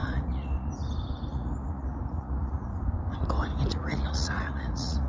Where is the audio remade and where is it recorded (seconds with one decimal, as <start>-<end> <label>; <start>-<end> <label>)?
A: 0.0-0.7 remade; 0.7-1.3 recorded; 1.3-2.7 remade; 2.7-3.7 recorded; 3.7-5.1 remade